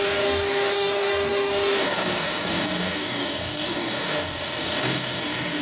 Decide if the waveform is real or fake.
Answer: fake